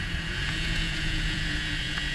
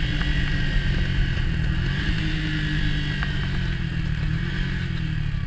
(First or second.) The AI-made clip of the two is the first